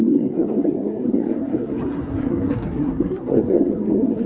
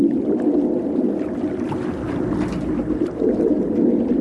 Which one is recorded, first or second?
second